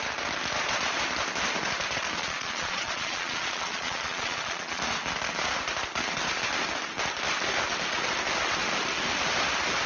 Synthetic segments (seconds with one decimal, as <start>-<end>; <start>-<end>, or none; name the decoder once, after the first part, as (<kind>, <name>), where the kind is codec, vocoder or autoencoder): 2.2-4.8 (vocoder, Vocos)

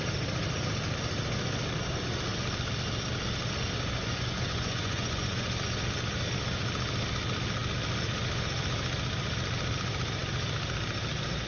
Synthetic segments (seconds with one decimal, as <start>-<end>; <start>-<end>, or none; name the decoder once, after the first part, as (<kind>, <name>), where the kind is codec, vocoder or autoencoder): 4.0-5.5 (vocoder, Vocos)